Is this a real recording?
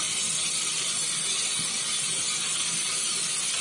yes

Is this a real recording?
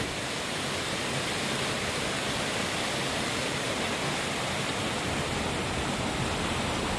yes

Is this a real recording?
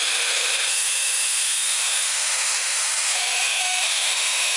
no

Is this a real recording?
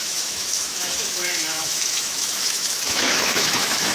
no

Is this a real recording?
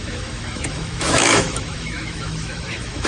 no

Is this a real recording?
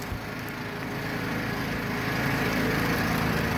yes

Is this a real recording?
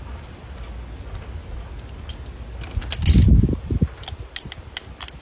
yes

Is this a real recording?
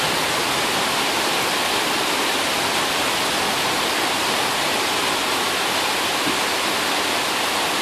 yes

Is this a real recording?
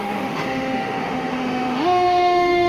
no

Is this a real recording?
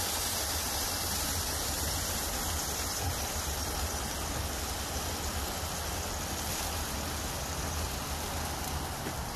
yes